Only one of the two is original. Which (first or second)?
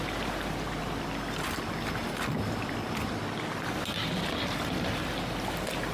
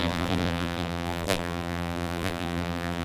first